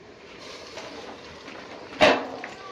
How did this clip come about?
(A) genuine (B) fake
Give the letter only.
B